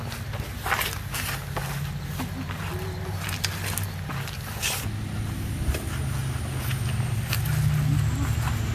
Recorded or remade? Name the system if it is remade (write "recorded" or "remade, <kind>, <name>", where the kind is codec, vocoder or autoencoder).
recorded